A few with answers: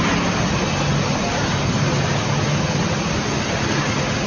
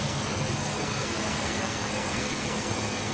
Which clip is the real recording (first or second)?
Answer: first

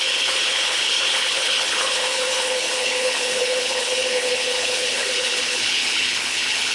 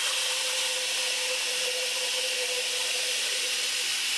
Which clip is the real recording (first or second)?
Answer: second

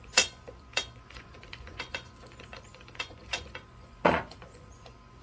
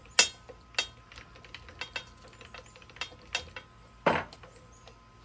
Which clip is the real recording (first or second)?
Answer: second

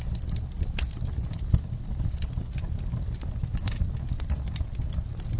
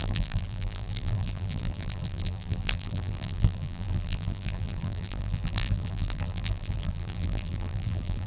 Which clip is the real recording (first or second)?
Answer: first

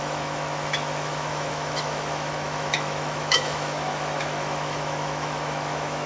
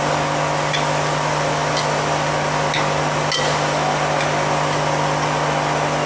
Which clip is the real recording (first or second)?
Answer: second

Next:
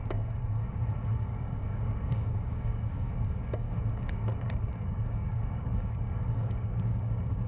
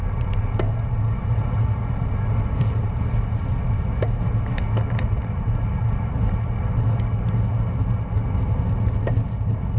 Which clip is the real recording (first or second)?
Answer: second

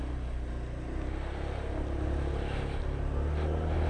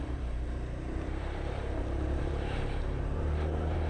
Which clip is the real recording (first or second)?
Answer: first